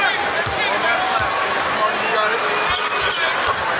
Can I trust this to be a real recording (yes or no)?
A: yes